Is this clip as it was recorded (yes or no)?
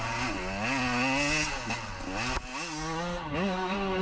yes